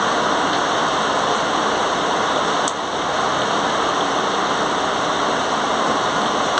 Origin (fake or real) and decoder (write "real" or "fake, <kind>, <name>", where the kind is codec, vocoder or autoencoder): real